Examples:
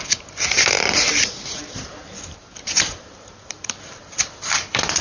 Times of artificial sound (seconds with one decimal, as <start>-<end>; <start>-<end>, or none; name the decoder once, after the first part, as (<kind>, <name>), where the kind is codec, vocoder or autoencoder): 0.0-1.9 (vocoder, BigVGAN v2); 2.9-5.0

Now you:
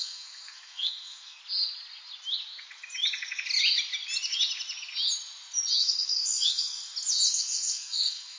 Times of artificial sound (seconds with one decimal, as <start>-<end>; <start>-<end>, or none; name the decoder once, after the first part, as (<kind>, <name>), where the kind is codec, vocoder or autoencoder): 0.0-1.4 (codec, SNAC); 5.8-6.8; 7.3-8.4

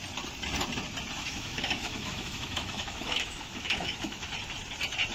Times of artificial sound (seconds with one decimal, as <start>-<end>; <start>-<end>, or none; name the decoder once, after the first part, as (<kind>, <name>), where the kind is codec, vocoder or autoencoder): 1.2-4.3 (autoencoder, DAC-VAE)